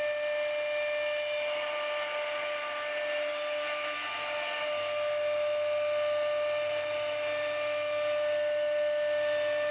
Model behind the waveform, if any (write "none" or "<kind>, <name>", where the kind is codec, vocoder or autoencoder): none